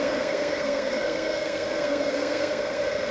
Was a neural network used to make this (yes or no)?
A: yes